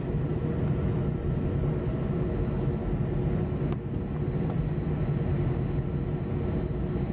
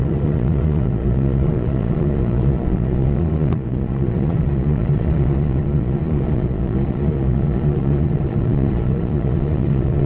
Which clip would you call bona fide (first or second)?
first